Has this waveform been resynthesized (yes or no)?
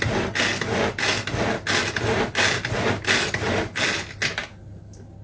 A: no